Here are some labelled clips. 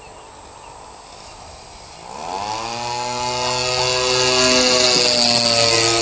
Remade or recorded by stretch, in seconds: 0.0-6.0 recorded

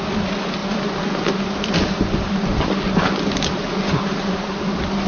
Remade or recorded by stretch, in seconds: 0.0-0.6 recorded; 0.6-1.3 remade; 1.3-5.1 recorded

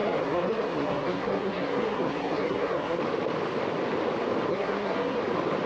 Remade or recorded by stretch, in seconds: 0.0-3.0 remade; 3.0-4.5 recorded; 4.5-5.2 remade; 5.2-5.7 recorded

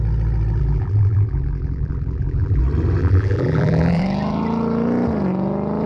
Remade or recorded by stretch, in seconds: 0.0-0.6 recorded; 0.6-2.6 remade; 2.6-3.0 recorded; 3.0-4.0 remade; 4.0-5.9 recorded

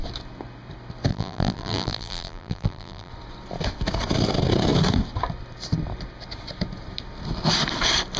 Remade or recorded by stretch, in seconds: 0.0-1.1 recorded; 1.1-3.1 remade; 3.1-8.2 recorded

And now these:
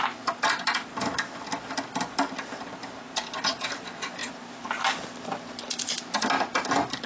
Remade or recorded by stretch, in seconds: 0.0-7.1 recorded

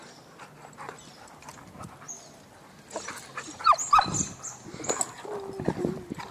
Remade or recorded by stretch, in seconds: 0.0-6.3 recorded